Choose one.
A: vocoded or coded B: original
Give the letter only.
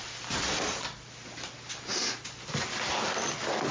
B